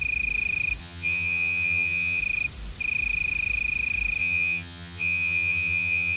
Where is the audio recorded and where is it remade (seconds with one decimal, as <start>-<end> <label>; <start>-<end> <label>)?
0.0-0.8 recorded; 0.8-2.2 remade; 2.2-4.2 recorded; 4.2-6.2 remade